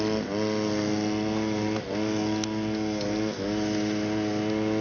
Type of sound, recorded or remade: recorded